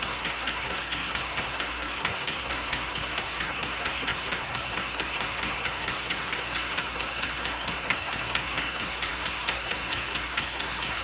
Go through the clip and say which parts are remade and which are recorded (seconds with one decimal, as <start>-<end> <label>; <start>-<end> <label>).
0.0-11.0 remade